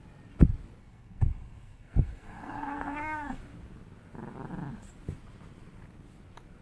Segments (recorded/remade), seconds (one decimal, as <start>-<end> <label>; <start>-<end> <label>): 0.0-0.8 recorded; 0.8-3.4 remade; 3.4-6.6 recorded